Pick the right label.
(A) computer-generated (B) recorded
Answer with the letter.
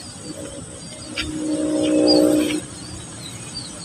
B